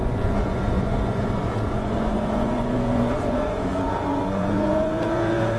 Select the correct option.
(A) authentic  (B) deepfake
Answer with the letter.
B